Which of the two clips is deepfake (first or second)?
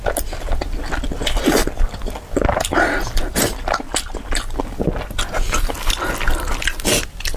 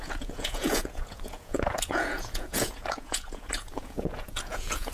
second